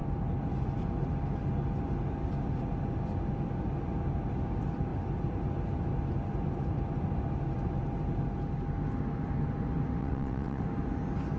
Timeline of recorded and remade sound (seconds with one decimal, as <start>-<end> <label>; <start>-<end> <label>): 0.0-10.0 recorded; 10.0-10.6 remade; 10.6-11.4 recorded